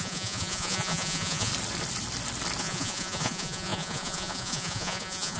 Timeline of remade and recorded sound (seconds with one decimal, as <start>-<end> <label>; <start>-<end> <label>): 0.0-1.5 remade; 1.5-2.6 recorded; 2.6-5.4 remade